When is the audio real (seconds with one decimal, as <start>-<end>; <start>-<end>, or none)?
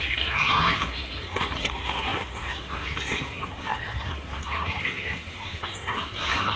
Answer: none